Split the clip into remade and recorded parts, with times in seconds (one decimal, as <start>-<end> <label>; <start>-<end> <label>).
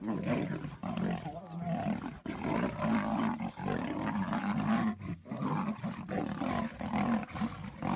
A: 0.0-0.8 recorded; 0.8-1.4 remade; 1.4-8.0 recorded